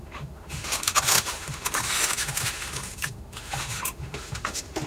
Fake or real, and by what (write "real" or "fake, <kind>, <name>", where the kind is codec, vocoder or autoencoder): fake, autoencoder, DAC-VAE